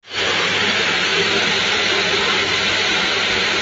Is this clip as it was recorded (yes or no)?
yes